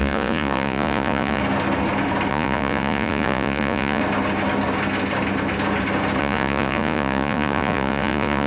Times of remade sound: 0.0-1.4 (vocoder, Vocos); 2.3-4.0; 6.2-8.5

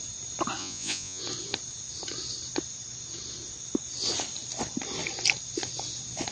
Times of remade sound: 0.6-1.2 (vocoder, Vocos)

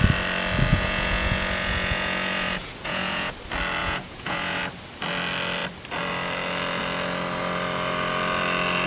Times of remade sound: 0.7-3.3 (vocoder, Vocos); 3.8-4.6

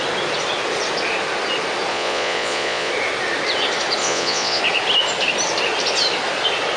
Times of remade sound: 1.9-2.9 (vocoder, Vocos); 4.0-4.6